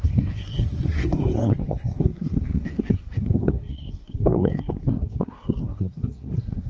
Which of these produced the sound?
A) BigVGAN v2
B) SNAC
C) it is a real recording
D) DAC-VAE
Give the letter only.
B